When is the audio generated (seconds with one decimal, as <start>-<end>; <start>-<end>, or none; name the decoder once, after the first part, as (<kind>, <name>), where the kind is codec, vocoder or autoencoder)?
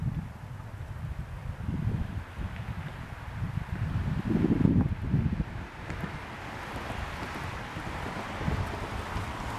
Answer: none